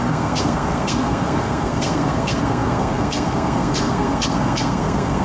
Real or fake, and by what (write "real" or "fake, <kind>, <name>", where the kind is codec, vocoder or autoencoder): fake, codec, SNAC